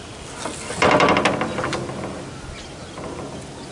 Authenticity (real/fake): real